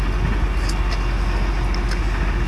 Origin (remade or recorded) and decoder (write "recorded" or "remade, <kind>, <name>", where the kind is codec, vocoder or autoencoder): recorded